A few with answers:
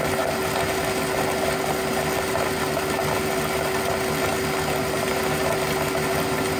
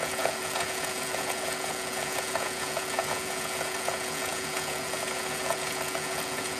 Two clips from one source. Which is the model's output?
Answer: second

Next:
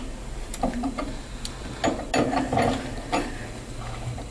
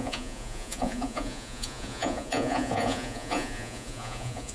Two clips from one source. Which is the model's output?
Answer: second